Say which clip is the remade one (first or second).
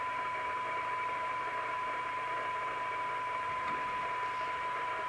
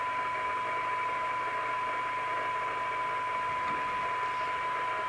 first